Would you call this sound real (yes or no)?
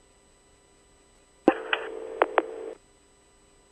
yes